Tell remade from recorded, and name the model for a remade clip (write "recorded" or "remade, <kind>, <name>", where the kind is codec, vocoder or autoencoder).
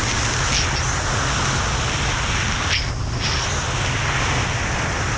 recorded